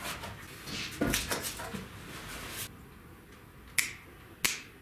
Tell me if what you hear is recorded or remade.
recorded